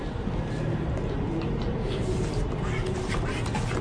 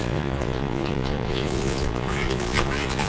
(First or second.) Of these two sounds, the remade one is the second